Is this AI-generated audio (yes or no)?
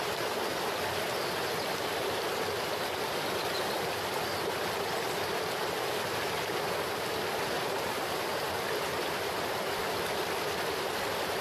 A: yes